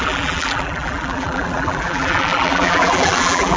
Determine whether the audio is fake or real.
fake